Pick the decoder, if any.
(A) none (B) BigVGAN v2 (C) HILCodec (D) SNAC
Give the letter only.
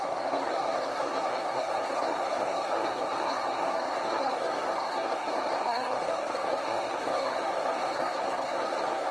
D